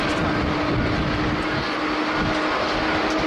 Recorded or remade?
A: recorded